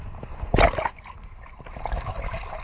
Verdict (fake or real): real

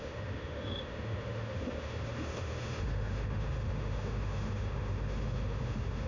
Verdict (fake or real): fake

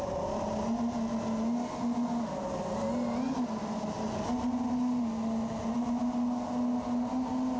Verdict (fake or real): real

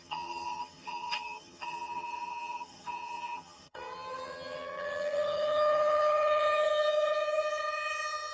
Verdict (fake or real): fake